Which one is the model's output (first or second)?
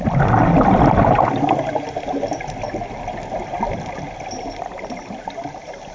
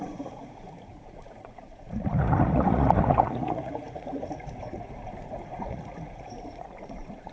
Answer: second